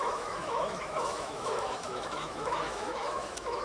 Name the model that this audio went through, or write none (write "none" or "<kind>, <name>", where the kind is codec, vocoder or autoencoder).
autoencoder, DAC-VAE